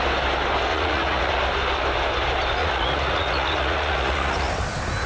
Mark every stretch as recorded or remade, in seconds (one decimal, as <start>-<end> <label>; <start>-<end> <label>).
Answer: 0.0-0.7 recorded; 0.7-1.3 remade; 1.3-2.6 recorded; 2.6-4.5 remade; 4.5-5.1 recorded